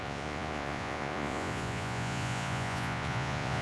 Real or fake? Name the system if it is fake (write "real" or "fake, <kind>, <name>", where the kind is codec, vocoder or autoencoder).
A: fake, vocoder, Vocos